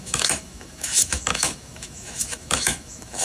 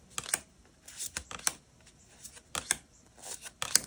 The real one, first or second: second